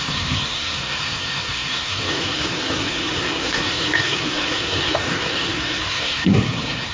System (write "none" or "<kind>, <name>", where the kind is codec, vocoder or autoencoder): codec, SNAC